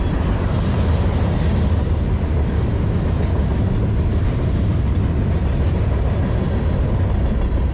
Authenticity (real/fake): real